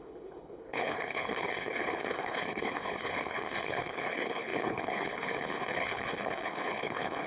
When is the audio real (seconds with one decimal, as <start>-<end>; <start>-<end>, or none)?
none